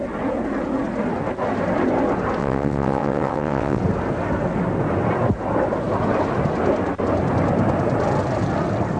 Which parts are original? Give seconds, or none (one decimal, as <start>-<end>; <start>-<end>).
0.0-2.4; 3.8-9.0